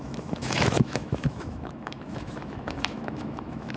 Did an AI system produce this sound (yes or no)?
yes